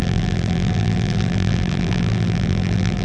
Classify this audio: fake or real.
fake